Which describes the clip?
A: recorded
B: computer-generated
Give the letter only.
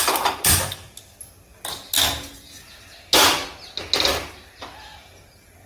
A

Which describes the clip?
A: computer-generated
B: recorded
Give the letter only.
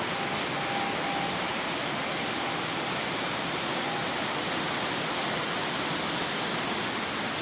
B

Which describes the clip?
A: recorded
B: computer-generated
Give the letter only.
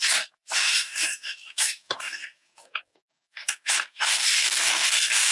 B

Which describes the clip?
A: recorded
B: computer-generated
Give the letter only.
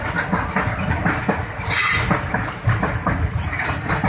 A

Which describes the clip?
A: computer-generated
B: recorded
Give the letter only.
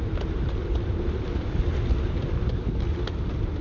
B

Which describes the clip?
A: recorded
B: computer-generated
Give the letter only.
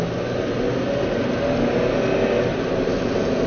A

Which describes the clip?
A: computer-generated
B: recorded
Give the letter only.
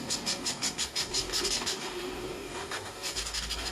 A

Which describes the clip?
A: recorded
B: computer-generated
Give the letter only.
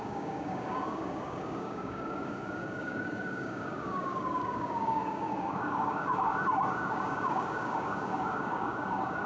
B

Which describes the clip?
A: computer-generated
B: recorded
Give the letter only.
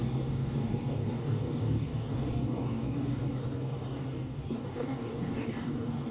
A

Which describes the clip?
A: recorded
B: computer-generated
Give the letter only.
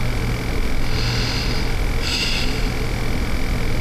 A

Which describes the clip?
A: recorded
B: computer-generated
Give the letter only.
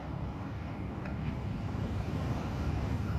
B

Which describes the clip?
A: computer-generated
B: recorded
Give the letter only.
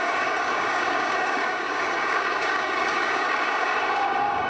A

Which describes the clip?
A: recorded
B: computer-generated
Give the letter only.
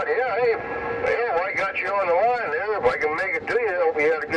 A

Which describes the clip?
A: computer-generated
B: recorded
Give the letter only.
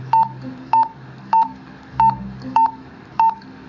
A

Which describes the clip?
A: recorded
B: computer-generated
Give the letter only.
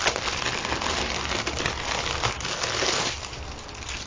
A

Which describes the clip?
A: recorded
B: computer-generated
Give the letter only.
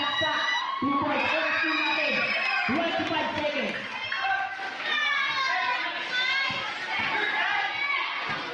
A